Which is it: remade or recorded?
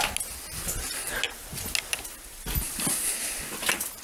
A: recorded